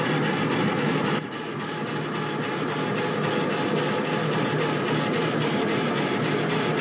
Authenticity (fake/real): real